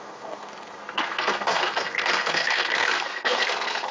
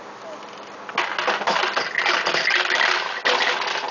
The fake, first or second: first